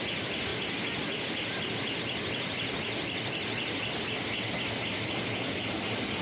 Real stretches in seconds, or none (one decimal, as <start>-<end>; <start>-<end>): 0.0-6.2